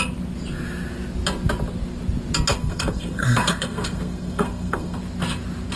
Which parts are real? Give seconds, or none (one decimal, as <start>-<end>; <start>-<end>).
0.0-2.5; 5.0-5.8